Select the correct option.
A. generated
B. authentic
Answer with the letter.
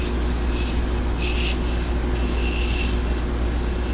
B